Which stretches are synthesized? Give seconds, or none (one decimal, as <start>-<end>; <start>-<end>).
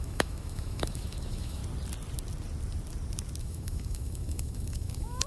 0.0-1.6; 3.4-5.3